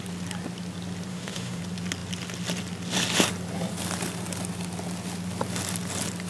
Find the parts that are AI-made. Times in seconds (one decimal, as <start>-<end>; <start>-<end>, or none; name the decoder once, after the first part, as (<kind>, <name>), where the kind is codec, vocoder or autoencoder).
1.1-1.6 (autoencoder, DAC-VAE)